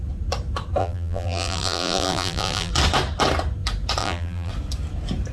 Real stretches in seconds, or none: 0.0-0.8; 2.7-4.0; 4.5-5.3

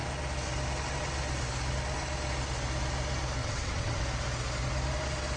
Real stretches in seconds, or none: 0.0-3.4; 4.0-5.4

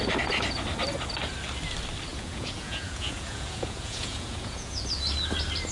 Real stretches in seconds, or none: 0.0-2.1; 4.8-5.7